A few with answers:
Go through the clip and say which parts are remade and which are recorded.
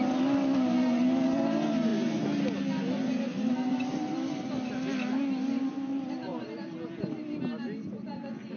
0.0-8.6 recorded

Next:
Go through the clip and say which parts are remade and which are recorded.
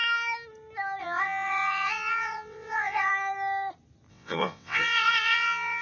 0.0-1.0 recorded; 1.0-3.1 remade; 3.1-4.1 recorded; 4.1-5.8 remade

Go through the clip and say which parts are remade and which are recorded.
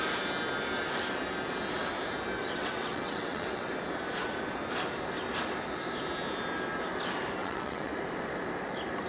0.0-2.4 recorded; 2.4-3.7 remade; 3.7-7.4 recorded; 7.4-7.9 remade; 7.9-9.1 recorded